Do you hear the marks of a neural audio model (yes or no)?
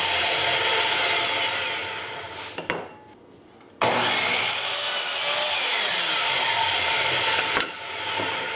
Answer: no